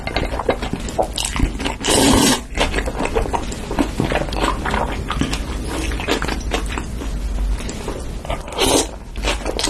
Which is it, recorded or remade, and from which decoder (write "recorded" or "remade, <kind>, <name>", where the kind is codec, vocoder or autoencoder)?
recorded